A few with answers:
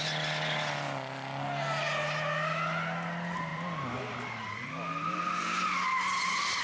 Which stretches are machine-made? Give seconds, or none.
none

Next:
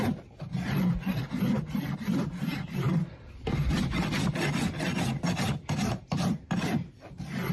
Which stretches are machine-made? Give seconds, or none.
none

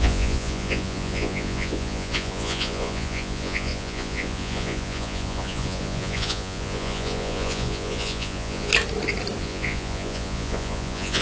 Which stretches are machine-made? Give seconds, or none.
0.0-8.7 (vocoder, Vocos); 9.4-11.2